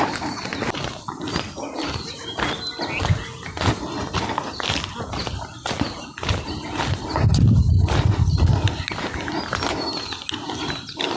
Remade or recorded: recorded